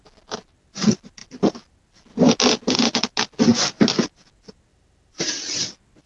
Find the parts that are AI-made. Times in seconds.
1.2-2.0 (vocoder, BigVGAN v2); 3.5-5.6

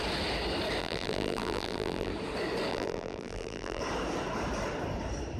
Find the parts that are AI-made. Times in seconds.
0.8-2.1 (vocoder, BigVGAN v2); 2.7-3.8

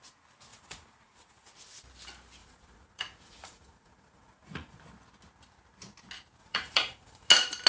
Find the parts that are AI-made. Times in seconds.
0.5-1.5 (vocoder, Vocos); 2.4-4.8; 6.4-7.3

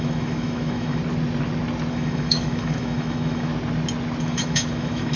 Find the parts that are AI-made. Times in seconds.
0.0-1.0 (autoencoder, DAC-VAE); 1.9-3.5; 4.2-5.2

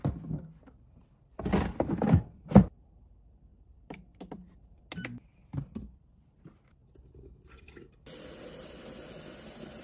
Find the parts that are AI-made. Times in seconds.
3.5-4.8 (vocoder, BigVGAN v2); 5.4-6.0

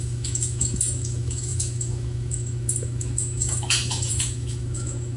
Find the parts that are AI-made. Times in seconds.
0.0-5.2 (autoencoder, DAC-VAE)

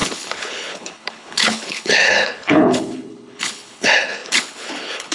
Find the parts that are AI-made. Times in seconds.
0.0-5.1 (codec, HILCodec)